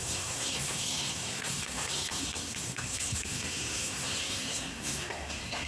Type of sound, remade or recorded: remade